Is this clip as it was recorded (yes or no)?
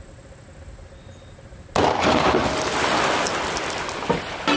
yes